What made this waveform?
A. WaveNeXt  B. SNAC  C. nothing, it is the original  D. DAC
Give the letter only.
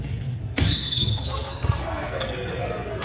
B